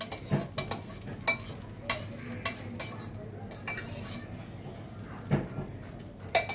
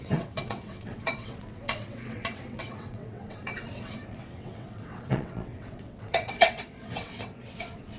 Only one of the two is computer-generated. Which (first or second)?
second